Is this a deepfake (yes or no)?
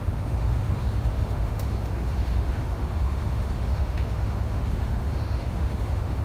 yes